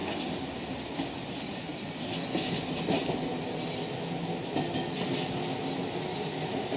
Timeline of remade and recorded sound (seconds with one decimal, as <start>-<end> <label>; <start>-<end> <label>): 0.0-6.8 recorded